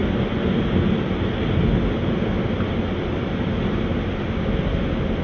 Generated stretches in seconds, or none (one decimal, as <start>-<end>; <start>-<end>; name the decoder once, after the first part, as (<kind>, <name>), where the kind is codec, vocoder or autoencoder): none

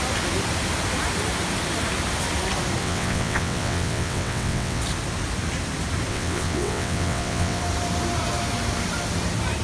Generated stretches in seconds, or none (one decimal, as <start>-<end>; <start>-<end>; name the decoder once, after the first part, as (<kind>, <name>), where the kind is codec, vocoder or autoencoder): 2.8-4.8 (vocoder, WaveNeXt); 6.1-7.6

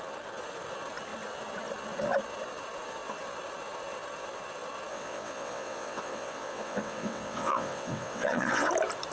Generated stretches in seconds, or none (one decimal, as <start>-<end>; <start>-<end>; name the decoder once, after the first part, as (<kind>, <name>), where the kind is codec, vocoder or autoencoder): 4.9-8.7 (vocoder, WaveNeXt)

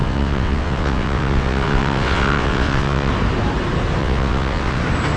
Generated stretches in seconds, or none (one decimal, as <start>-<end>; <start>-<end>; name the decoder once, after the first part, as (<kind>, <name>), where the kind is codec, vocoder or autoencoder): 0.0-3.1 (vocoder, WaveNeXt); 4.0-4.8

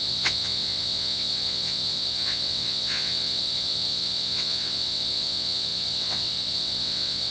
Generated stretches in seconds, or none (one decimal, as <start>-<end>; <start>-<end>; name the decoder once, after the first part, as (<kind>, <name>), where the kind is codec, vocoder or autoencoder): 0.0-7.3 (vocoder, WaveNeXt)